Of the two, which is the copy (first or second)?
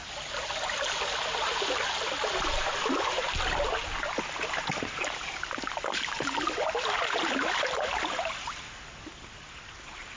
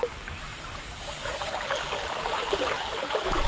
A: second